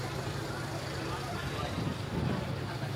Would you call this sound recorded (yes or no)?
no